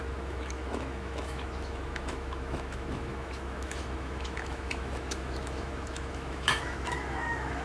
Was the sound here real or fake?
fake